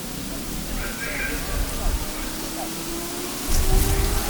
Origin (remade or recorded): recorded